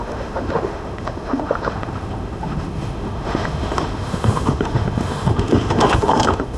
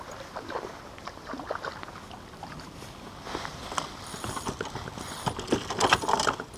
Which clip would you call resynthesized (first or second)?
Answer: first